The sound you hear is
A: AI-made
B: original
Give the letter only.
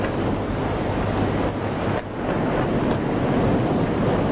B